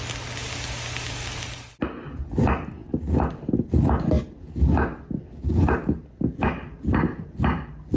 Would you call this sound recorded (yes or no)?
yes